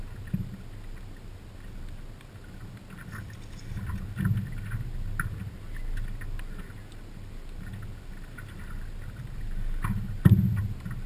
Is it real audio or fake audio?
real